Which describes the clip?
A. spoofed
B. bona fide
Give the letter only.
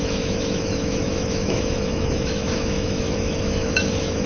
A